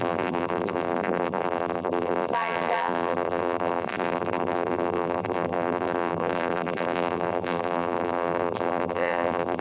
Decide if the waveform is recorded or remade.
remade